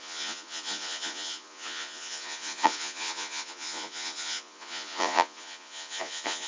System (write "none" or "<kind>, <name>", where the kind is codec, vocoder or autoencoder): vocoder, Vocos